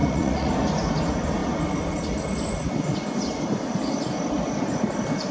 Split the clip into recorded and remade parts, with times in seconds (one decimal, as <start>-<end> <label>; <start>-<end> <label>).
0.0-0.5 remade; 0.5-5.3 recorded